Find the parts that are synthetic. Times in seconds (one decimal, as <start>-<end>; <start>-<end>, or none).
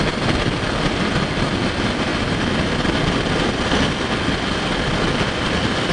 2.1-5.9